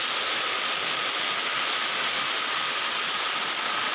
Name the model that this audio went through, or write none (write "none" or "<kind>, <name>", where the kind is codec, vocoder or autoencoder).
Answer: none